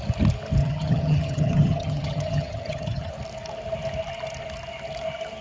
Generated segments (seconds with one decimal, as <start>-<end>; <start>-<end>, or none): 0.6-3.1